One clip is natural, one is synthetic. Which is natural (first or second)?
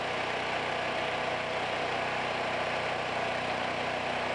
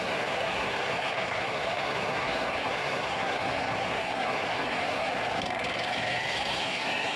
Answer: first